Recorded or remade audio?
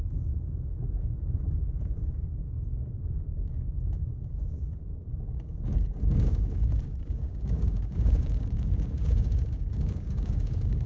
remade